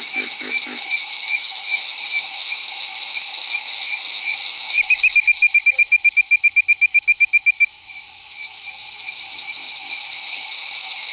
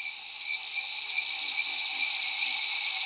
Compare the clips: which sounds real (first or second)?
second